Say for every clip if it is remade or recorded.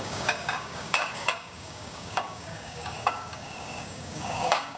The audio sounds remade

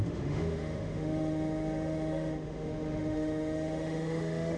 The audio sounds remade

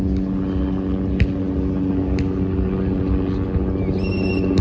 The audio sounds recorded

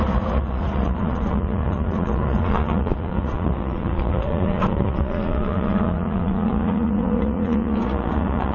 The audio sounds remade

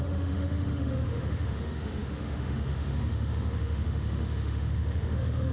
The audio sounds remade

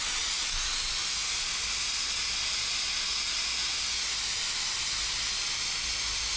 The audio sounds recorded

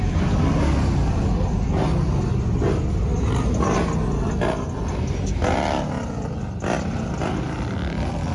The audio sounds recorded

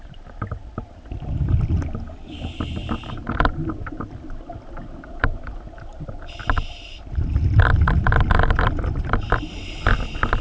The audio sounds recorded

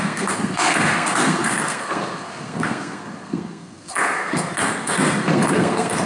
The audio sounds remade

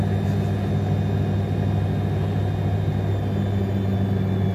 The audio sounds recorded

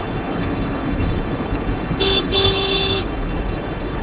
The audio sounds remade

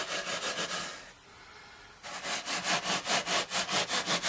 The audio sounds recorded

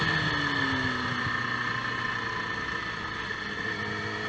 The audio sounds recorded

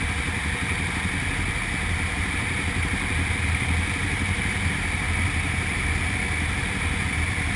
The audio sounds recorded